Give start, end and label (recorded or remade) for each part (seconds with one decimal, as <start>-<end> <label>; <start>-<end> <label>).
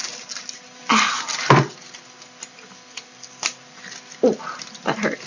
0.0-5.3 recorded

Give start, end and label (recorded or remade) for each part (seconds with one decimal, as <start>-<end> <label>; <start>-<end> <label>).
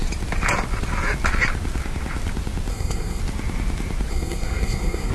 0.0-2.7 recorded; 2.7-3.2 remade; 3.2-4.1 recorded; 4.1-5.1 remade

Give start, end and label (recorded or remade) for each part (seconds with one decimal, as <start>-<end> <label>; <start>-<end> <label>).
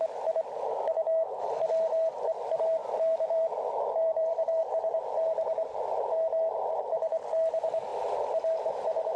0.0-2.8 recorded; 2.8-4.6 remade; 4.6-9.2 recorded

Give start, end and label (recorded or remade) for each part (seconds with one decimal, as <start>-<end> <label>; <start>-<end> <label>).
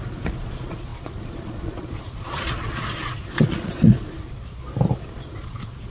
0.0-4.2 remade; 4.2-5.1 recorded; 5.1-5.9 remade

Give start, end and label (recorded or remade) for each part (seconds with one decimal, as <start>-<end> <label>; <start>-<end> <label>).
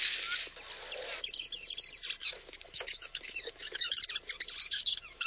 0.0-2.2 recorded; 2.2-4.0 remade; 4.0-4.6 recorded; 4.6-5.3 remade